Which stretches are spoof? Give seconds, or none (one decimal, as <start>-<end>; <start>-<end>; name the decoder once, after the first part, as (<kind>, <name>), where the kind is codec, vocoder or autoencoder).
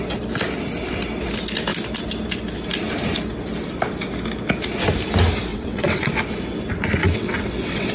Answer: 5.5-6.1 (vocoder, WaveNeXt); 7.0-7.9